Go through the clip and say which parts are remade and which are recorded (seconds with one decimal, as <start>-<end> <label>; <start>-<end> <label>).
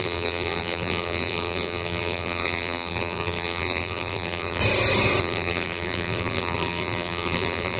0.0-4.6 remade; 4.6-5.2 recorded; 5.2-7.8 remade